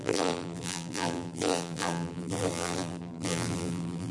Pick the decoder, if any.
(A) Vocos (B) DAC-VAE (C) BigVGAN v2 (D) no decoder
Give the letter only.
C